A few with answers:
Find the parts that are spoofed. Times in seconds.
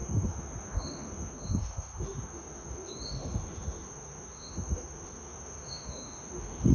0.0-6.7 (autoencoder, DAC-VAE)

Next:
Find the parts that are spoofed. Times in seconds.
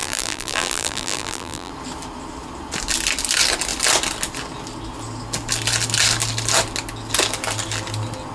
0.0-1.7 (vocoder, BigVGAN v2)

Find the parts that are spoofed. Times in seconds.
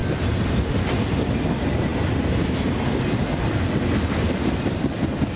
none